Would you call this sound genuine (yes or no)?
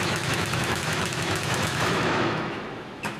no